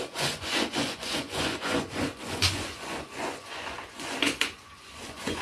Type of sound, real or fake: fake